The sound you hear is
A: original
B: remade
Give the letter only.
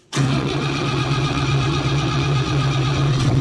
B